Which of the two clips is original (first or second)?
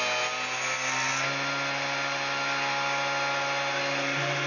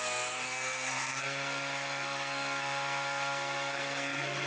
first